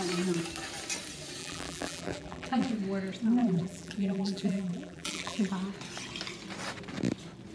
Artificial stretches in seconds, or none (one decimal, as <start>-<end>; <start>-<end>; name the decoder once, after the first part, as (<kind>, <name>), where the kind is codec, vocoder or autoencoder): 1.4-2.7 (vocoder, BigVGAN v2); 3.4-5.5